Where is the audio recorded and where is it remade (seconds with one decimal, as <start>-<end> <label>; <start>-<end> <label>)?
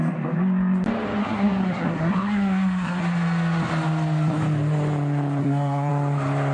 0.0-1.2 recorded; 1.2-3.0 remade; 3.0-5.4 recorded; 5.4-5.9 remade; 5.9-6.5 recorded